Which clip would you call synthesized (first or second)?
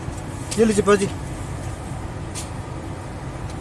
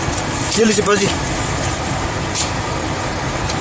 second